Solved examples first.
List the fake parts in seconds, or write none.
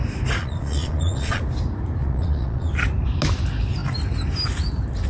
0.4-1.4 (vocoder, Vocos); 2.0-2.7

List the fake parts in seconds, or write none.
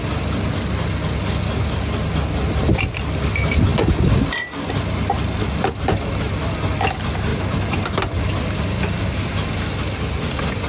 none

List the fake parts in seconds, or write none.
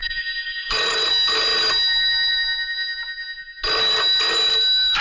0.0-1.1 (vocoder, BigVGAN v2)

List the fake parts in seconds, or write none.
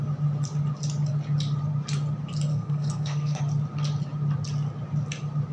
2.5-3.4 (codec, SNAC)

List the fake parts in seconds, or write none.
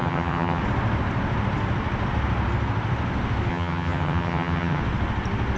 0.0-0.6 (vocoder, HiFi-GAN); 3.5-4.8